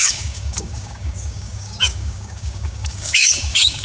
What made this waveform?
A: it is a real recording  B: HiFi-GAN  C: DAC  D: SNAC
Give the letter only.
C